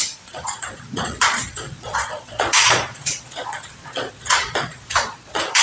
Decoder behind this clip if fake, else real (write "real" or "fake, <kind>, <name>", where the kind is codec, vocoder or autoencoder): fake, vocoder, Vocos